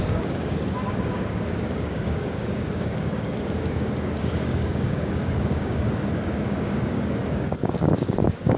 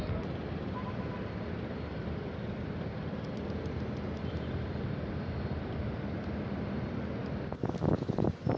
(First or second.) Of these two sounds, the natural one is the second